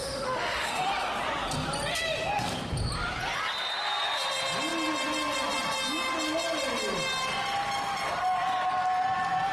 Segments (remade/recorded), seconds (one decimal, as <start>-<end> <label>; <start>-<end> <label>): 0.0-0.9 remade; 0.9-9.5 recorded